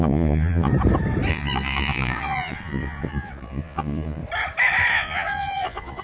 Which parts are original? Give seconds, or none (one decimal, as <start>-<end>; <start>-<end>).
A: 0.7-1.3; 4.2-4.9

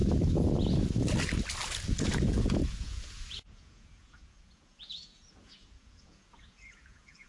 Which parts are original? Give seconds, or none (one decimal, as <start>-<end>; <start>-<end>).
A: 0.0-2.0

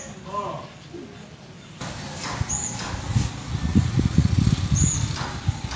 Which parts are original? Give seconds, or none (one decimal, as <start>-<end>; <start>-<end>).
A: 0.0-3.7; 4.4-5.8

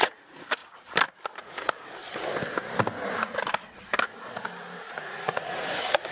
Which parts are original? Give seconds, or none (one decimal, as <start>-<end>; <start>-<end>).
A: 0.6-1.4; 2.0-4.9

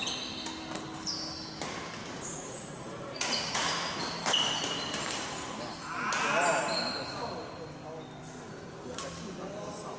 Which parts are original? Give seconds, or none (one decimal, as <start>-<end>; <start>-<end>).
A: 0.0-2.0; 4.0-10.0